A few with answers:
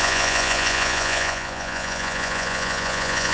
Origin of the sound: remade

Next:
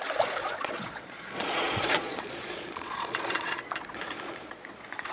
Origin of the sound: remade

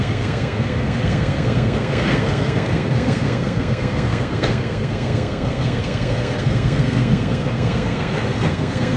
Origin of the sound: remade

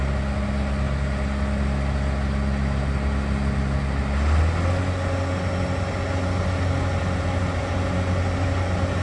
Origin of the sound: recorded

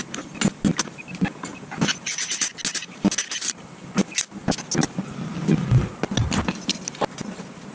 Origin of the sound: recorded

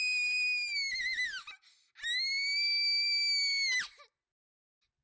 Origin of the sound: recorded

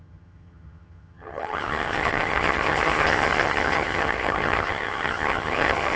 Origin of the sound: remade